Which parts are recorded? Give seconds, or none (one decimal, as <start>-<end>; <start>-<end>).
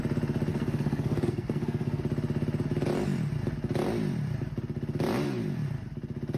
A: 0.0-0.5; 2.0-6.4